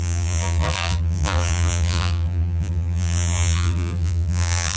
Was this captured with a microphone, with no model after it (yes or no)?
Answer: no